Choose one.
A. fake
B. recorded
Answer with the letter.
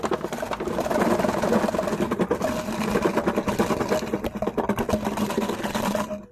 B